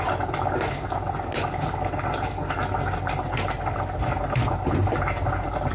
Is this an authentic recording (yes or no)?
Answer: yes